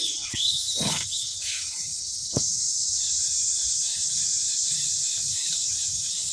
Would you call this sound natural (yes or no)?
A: no